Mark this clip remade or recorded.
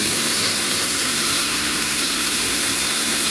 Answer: remade